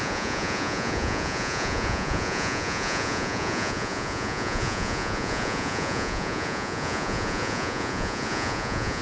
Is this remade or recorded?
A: remade